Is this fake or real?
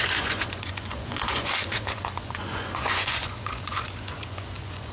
fake